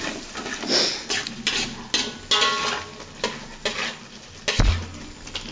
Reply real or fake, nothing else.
real